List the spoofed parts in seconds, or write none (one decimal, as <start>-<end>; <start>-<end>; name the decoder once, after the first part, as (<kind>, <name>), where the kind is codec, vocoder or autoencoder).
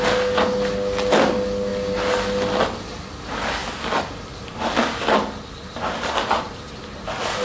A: none